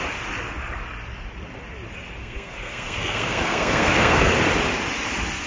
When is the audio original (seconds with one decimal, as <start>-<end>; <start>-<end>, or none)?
0.0-2.2; 4.3-5.5